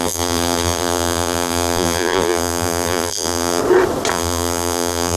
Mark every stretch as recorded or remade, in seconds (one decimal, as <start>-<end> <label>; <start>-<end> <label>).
0.0-3.6 remade; 3.6-4.1 recorded; 4.1-5.2 remade